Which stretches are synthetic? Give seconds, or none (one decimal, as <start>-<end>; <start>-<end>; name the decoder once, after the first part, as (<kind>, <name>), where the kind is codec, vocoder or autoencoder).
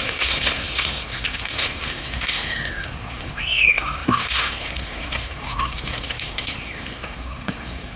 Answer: 0.0-8.0 (codec, SNAC)